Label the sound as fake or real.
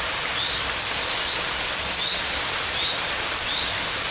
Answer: real